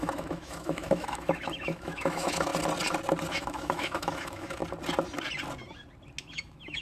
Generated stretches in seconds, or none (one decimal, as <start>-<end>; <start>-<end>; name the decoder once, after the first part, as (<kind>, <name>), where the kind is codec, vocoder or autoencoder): 0.0-2.5 (autoencoder, DAC-VAE); 3.3-4.6; 6.2-6.8